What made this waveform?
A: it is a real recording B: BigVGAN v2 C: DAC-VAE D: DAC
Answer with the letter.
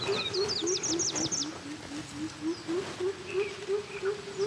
A